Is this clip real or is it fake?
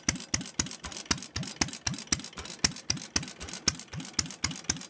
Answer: real